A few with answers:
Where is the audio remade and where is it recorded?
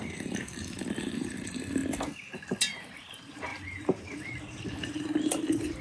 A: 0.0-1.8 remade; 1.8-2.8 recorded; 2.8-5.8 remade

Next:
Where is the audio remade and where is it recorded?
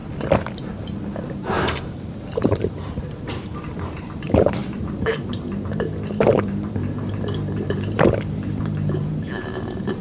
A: 0.0-1.3 recorded; 1.3-10.0 remade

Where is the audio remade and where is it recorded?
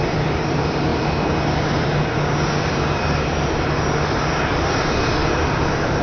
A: 0.0-0.9 remade; 0.9-4.5 recorded; 4.5-6.0 remade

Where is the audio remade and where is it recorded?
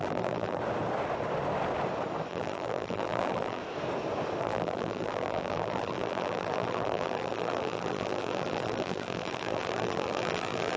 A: 0.0-0.6 remade; 0.6-2.3 recorded; 2.3-3.6 remade; 3.6-4.4 recorded; 4.4-10.8 remade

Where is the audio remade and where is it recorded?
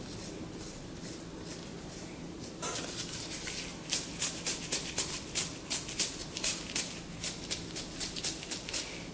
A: 0.0-1.7 recorded; 1.7-3.2 remade; 3.2-6.2 recorded; 6.2-6.8 remade; 6.8-9.1 recorded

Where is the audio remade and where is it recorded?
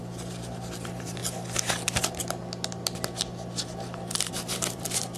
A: 0.0-1.2 remade; 1.2-4.3 recorded; 4.3-5.2 remade